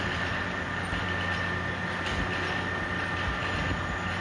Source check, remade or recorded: recorded